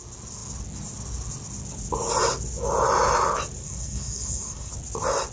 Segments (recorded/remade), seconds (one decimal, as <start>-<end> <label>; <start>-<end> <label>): 0.0-3.6 recorded; 3.6-4.7 remade; 4.7-5.3 recorded